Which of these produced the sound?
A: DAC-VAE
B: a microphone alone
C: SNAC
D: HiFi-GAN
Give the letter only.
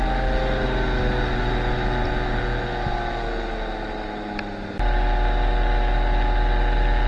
B